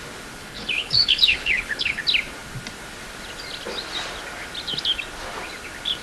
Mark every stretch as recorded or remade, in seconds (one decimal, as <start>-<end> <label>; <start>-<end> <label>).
0.0-0.4 recorded; 0.4-2.0 remade; 2.0-6.0 recorded